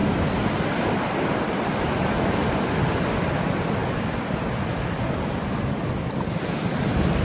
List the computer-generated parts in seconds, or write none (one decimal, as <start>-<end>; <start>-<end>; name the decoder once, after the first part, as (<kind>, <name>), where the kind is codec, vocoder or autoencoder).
none